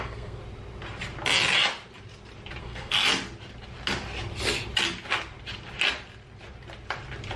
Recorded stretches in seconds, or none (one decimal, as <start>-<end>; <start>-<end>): 0.4-2.6; 3.0-7.4